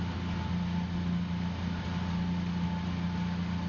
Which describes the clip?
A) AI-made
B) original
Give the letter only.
B